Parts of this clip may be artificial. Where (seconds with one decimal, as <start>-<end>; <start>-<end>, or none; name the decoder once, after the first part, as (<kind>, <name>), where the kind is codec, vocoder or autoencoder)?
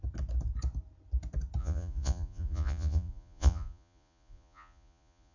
1.6-5.3 (vocoder, Vocos)